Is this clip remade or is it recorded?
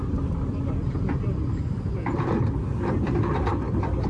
recorded